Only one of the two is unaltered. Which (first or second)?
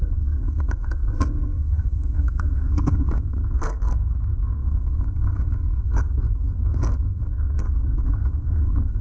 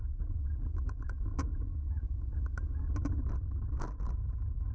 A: second